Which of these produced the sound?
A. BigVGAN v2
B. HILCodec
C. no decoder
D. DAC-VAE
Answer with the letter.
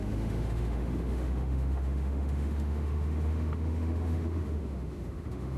D